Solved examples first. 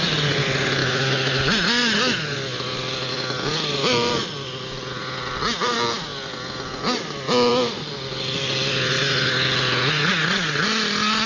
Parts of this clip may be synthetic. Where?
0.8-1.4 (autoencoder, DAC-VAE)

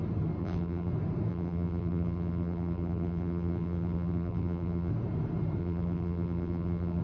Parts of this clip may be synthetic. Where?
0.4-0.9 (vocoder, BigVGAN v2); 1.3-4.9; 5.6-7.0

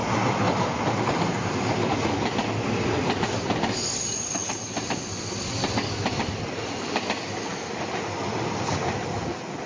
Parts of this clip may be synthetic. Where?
none